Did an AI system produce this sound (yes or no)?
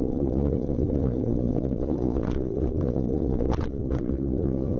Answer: yes